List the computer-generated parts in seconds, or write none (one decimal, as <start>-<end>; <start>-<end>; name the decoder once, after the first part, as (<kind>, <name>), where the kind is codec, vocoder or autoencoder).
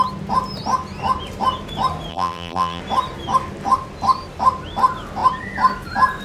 2.1-2.8 (vocoder, BigVGAN v2)